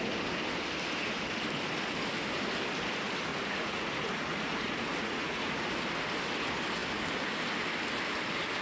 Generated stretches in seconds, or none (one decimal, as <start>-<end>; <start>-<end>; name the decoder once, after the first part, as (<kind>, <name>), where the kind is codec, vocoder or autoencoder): 3.3-5.7 (vocoder, Vocos)